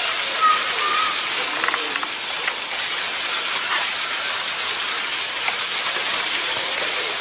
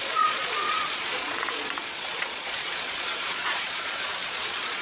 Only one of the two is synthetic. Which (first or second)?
second